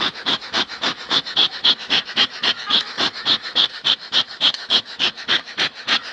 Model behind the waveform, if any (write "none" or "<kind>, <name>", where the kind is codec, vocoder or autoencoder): autoencoder, DAC-VAE